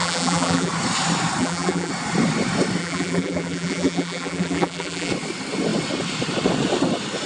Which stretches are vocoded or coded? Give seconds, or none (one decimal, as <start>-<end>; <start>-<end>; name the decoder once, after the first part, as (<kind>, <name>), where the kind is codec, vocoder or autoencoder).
0.0-0.7 (vocoder, BigVGAN v2); 1.4-1.9; 2.8-5.1